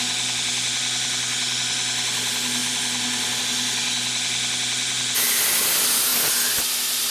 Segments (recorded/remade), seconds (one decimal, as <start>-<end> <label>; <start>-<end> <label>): 0.0-7.1 recorded